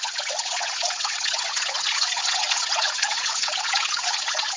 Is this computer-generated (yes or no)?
yes